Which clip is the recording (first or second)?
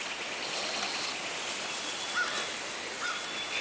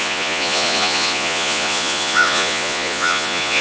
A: first